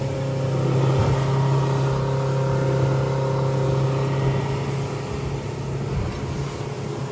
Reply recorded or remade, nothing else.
recorded